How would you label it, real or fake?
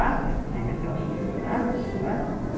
fake